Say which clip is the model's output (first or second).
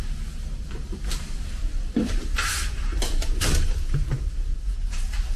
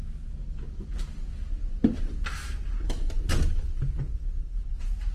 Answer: first